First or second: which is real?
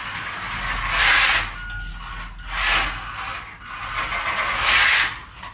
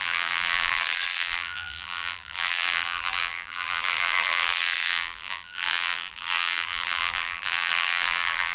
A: first